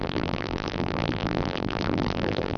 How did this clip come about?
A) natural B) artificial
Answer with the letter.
B